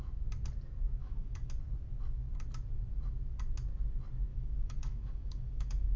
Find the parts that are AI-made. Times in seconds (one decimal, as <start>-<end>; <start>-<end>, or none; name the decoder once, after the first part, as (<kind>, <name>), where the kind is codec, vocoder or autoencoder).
1.0-1.5 (autoencoder, DAC-VAE); 4.3-6.0